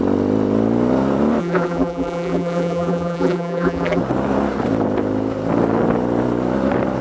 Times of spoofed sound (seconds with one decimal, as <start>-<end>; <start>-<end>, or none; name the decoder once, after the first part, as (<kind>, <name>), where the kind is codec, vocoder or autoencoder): 1.4-4.0 (vocoder, BigVGAN v2)